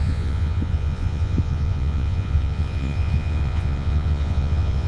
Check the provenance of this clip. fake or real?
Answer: fake